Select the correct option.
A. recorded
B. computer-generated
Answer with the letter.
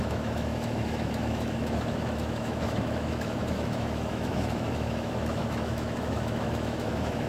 B